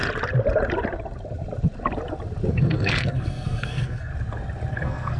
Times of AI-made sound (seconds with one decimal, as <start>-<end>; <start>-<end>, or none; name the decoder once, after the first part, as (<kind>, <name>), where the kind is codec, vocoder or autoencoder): 2.5-4.1 (codec, SNAC); 4.7-5.2